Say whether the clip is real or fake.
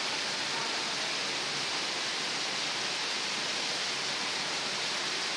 real